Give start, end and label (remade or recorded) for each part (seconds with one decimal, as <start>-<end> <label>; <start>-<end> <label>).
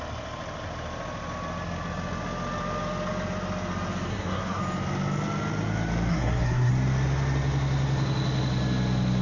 0.0-4.1 recorded; 4.1-4.6 remade; 4.6-6.1 recorded; 6.1-6.7 remade; 6.7-9.2 recorded